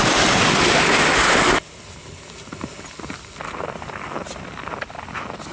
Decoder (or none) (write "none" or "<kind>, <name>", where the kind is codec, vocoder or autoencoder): none